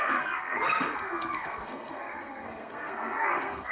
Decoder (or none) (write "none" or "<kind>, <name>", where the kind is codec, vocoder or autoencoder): codec, SNAC